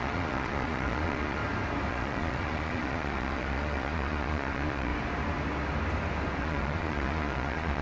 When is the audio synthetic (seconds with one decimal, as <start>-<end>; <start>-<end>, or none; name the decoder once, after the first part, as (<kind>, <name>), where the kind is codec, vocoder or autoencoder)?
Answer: 0.0-1.4 (vocoder, Vocos); 1.9-4.9; 6.4-7.8